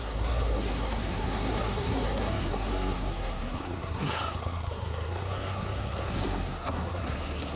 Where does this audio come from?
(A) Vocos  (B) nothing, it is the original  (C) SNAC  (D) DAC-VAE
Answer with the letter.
C